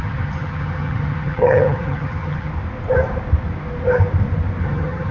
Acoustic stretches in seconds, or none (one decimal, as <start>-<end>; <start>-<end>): 2.5-4.6